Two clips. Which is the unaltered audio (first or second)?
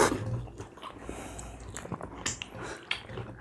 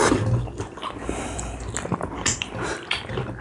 first